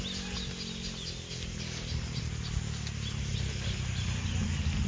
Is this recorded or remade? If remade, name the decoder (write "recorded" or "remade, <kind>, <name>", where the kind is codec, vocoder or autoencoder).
recorded